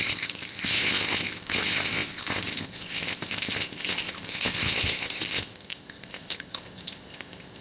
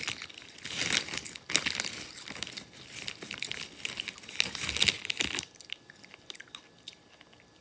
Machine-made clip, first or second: first